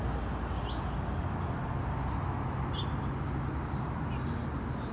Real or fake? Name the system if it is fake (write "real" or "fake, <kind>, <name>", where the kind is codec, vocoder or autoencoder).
real